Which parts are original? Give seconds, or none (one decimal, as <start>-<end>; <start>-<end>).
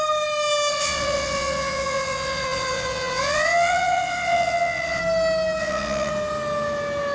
0.0-0.7; 5.0-5.6; 6.1-7.1